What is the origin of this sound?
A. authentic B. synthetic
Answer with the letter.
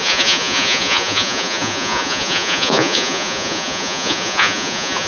B